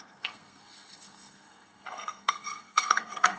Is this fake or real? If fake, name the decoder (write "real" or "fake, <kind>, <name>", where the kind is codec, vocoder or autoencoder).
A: fake, codec, SNAC